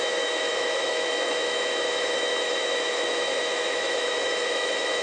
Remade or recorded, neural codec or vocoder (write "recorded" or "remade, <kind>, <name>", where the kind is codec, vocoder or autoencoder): remade, autoencoder, DAC-VAE